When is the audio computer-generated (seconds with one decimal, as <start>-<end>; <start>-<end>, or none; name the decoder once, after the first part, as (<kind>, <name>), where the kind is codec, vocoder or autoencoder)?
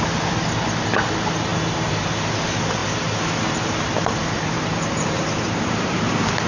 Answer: 1.5-2.3 (vocoder, BigVGAN v2); 2.8-6.1